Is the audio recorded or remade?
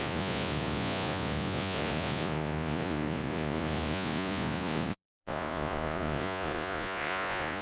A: remade